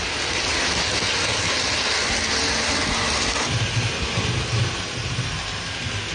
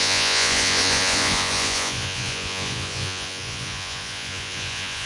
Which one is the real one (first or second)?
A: first